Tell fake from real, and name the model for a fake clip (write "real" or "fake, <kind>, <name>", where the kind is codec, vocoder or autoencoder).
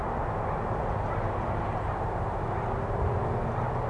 real